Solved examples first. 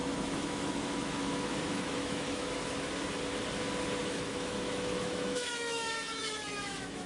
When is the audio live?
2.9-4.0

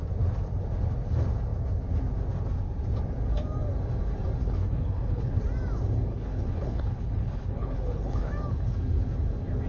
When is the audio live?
0.0-4.4; 5.4-6.1; 8.3-9.7